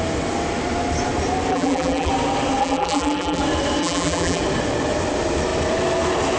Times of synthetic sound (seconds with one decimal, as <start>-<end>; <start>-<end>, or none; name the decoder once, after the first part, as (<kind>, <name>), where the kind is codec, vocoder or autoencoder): 1.5-2.1 (vocoder, BigVGAN v2); 2.6-3.4; 3.8-4.4